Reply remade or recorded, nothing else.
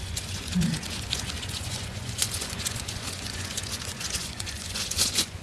remade